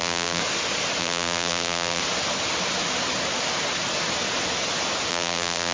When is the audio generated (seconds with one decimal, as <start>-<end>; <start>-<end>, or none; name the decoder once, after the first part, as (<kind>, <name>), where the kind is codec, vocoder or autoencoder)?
0.0-0.4 (vocoder, BigVGAN v2); 1.0-2.0; 5.1-5.7